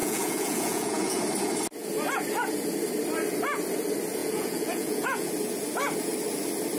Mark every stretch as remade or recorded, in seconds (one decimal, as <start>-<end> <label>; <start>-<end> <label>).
0.0-1.2 remade; 1.2-4.2 recorded; 4.2-5.3 remade; 5.3-6.8 recorded